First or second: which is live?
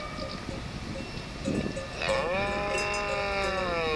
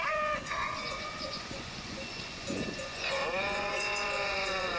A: first